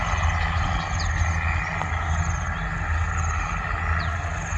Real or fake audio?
real